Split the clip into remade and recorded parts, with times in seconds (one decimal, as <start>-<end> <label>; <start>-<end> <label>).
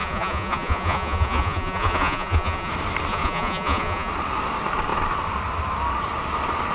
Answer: 0.0-2.7 remade; 2.7-3.1 recorded; 3.1-4.1 remade; 4.1-6.7 recorded